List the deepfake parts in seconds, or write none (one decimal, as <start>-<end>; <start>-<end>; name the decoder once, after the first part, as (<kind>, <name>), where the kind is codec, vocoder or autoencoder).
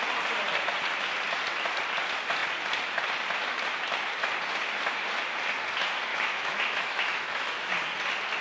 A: 6.1-7.7 (autoencoder, DAC-VAE)